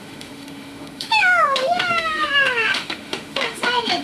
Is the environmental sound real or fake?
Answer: fake